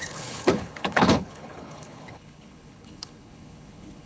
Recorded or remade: remade